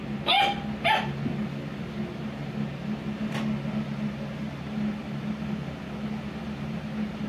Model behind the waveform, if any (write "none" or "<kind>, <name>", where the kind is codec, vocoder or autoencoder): none